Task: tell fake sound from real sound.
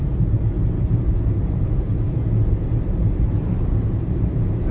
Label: fake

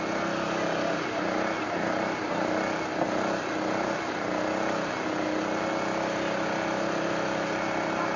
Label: real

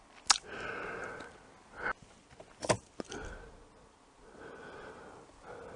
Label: real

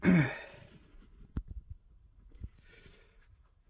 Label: fake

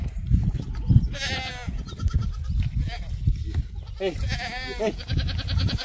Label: real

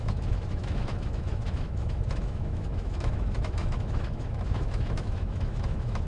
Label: fake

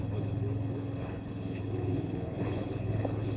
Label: fake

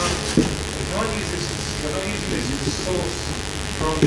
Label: real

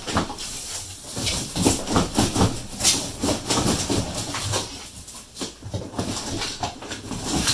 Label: real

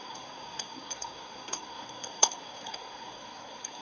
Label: fake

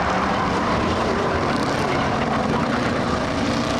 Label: fake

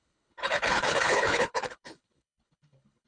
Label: fake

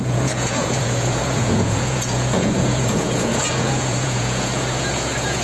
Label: fake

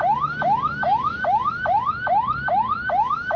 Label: real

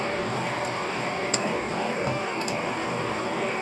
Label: fake